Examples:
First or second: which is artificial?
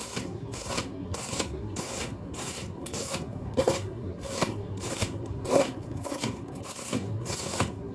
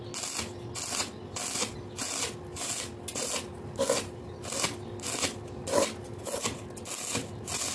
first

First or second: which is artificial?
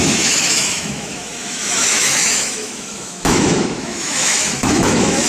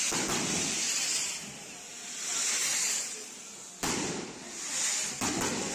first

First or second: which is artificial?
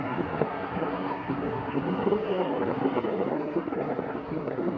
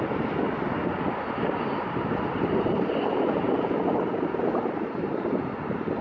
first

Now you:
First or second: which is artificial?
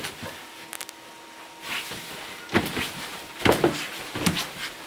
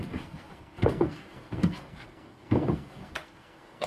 second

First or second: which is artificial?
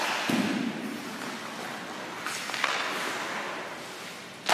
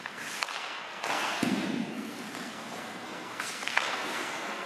second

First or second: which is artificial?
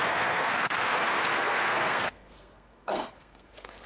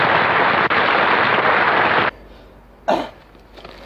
first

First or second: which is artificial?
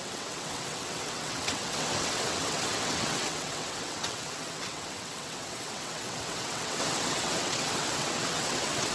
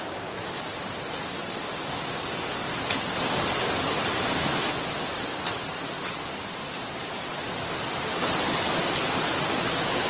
first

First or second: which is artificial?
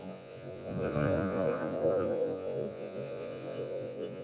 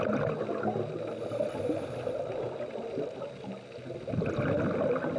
first